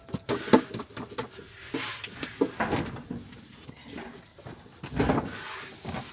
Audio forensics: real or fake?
real